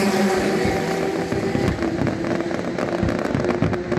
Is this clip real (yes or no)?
yes